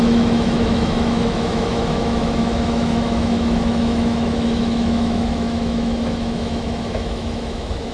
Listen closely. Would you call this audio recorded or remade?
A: remade